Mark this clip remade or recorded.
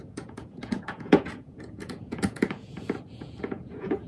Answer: remade